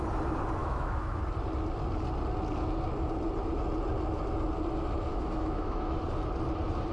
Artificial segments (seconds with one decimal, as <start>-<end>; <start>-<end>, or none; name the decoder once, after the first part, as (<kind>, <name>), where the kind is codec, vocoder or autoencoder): 0.6-1.2 (autoencoder, DAC-VAE); 5.1-6.0